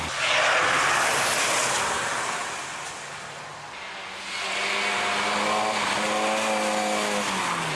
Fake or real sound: real